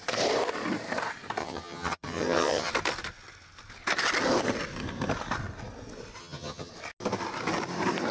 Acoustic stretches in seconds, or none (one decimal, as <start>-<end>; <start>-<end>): 0.0-1.4; 2.7-6.2; 6.7-8.1

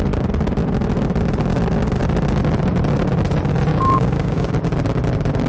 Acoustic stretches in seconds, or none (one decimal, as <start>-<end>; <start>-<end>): 0.0-3.7; 4.5-5.5

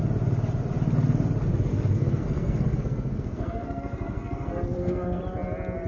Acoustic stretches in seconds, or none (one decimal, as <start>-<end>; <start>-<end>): 0.0-1.7; 5.2-5.9

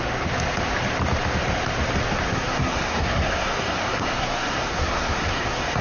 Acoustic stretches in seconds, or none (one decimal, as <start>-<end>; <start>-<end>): 0.0-2.3